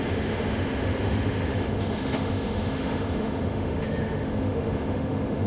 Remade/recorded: remade